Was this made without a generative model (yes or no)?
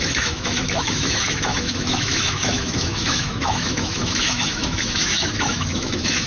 no